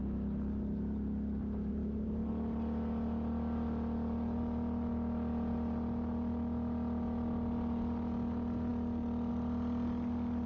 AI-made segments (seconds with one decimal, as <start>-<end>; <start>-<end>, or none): 1.7-2.3